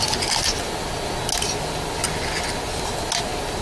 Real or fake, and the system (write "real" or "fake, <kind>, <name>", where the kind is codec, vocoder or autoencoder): real